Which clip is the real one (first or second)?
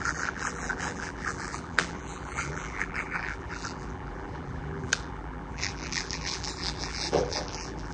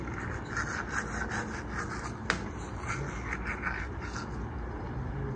second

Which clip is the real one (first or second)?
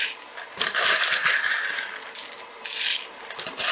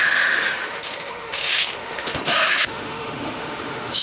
first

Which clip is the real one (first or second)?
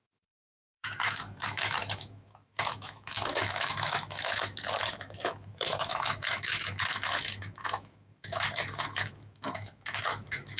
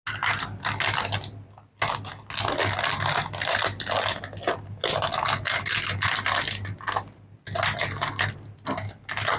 second